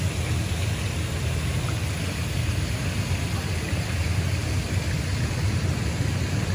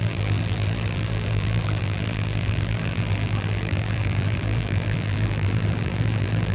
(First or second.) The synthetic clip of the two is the second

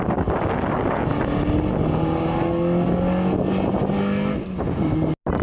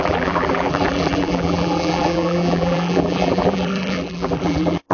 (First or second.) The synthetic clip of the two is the second